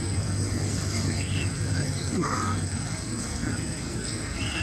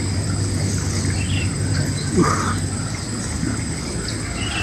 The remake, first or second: first